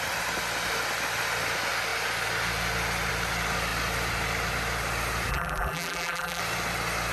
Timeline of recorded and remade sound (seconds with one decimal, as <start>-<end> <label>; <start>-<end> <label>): 0.0-5.3 recorded; 5.3-6.4 remade; 6.4-7.1 recorded